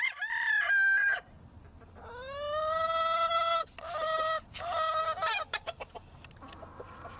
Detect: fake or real real